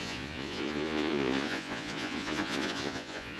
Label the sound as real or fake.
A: fake